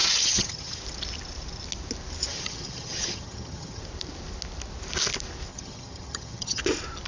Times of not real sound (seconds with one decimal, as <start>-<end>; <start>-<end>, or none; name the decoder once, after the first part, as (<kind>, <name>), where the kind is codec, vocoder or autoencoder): 0.0-0.8 (vocoder, HiFi-GAN); 2.3-3.8; 5.5-6.6